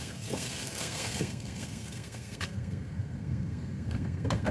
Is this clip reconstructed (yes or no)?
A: yes